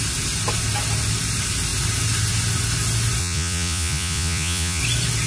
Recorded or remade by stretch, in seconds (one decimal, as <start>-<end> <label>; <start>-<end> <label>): 0.0-3.2 recorded; 3.2-4.8 remade; 4.8-5.3 recorded